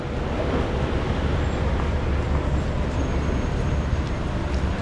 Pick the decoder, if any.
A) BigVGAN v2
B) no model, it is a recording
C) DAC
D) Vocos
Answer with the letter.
B